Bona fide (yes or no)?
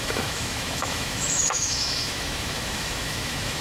no